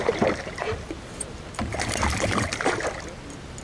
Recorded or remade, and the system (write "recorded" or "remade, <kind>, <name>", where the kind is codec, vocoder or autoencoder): recorded